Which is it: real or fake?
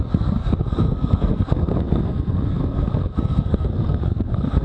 fake